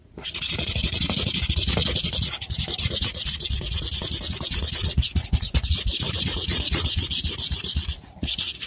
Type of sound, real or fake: fake